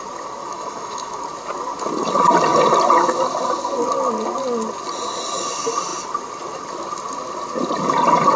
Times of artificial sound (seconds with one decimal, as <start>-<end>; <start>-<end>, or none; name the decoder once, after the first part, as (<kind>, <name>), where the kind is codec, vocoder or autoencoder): 0.4-1.2 (autoencoder, DAC-VAE)